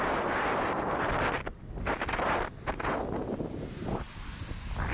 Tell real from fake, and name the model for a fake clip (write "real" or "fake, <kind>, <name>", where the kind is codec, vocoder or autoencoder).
real